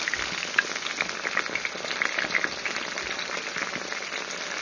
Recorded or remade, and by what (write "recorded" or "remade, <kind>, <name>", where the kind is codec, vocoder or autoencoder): recorded